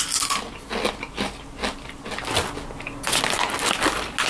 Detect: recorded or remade recorded